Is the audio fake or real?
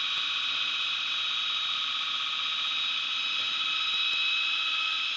real